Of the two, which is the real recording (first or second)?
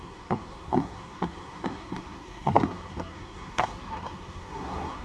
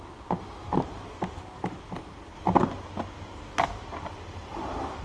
second